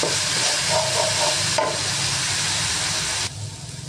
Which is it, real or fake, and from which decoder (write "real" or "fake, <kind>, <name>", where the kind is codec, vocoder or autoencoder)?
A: real